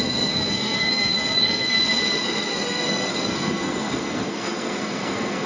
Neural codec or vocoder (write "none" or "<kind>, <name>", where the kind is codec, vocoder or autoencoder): codec, SNAC